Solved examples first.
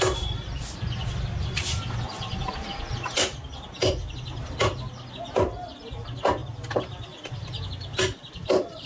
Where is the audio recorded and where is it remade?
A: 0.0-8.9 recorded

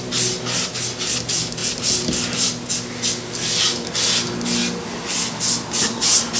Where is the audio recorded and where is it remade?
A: 0.0-6.4 recorded

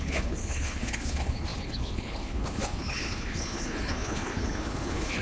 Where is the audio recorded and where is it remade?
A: 0.0-5.2 remade

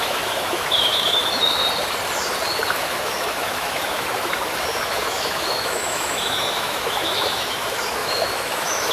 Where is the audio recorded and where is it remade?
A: 0.0-1.6 remade; 1.6-2.7 recorded; 2.7-8.9 remade